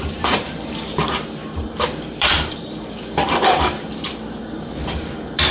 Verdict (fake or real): fake